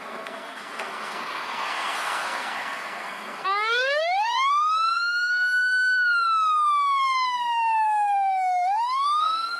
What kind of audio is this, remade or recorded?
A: remade